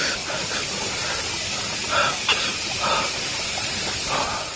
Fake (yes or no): no